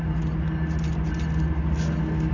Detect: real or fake real